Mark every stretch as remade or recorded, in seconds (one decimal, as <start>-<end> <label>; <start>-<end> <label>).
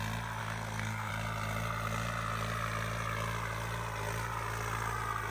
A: 0.0-0.4 recorded; 0.4-1.1 remade; 1.1-5.3 recorded